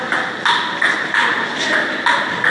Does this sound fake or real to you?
real